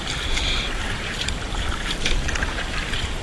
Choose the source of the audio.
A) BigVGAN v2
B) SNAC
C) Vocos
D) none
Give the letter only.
A